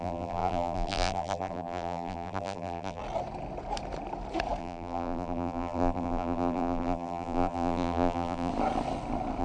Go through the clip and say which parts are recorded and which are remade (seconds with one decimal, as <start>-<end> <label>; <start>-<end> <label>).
0.0-3.0 remade; 3.0-4.6 recorded; 4.6-8.5 remade; 8.5-9.4 recorded